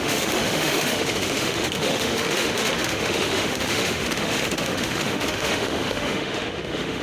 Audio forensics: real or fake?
fake